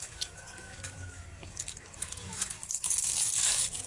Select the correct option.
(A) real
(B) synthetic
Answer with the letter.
B